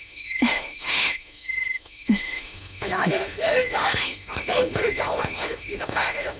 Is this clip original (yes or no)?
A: no